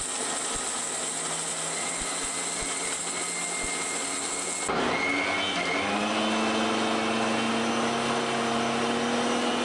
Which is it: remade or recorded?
recorded